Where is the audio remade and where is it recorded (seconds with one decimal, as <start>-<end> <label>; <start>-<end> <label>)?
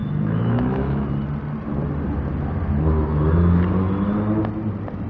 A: 0.0-1.1 remade; 1.1-5.1 recorded